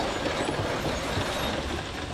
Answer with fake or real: real